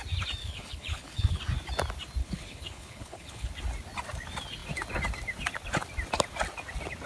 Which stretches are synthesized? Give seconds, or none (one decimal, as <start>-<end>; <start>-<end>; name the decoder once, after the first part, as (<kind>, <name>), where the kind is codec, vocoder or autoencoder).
0.4-1.4 (codec, HILCodec); 2.2-3.5